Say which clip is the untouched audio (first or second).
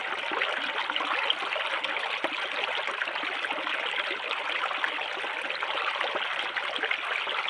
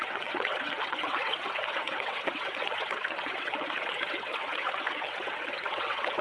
first